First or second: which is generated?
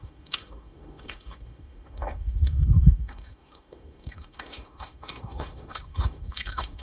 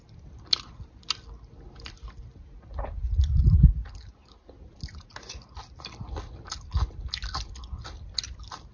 first